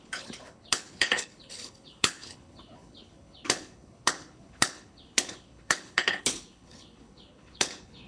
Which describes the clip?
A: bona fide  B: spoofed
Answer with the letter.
B